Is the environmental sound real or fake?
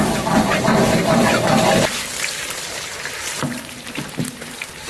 fake